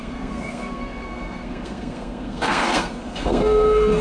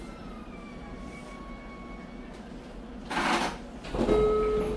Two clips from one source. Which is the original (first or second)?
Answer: second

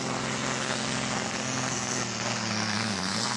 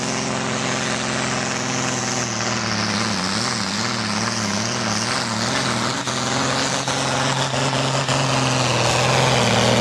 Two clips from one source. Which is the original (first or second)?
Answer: second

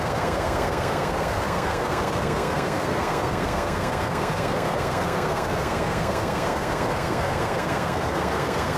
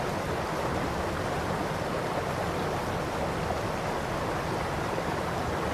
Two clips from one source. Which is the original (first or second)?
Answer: second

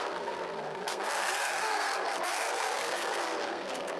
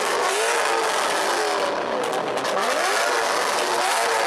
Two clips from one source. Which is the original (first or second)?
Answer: second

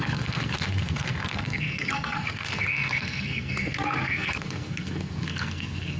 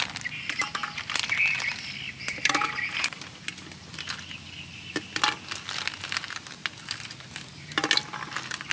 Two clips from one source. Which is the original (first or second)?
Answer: second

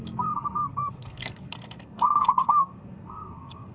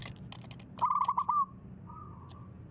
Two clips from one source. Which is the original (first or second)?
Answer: second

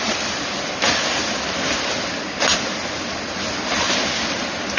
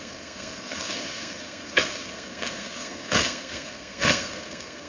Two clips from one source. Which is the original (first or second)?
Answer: first